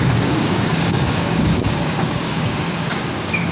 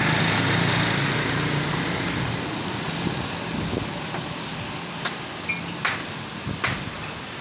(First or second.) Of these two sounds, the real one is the second